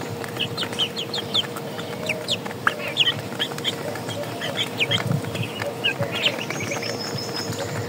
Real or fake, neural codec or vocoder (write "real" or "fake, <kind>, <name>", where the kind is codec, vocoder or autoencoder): fake, vocoder, BigVGAN v2